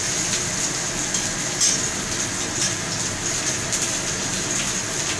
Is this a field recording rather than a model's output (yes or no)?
yes